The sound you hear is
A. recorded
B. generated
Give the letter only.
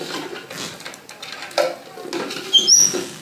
A